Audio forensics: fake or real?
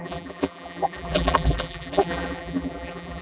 fake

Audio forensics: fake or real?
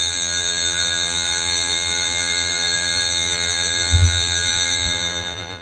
fake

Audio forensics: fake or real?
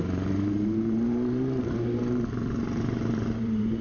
fake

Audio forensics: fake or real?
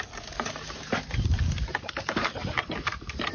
fake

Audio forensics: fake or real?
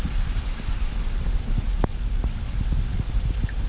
real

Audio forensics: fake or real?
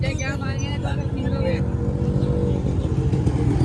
real